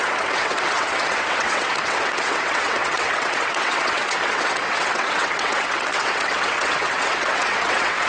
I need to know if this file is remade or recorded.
remade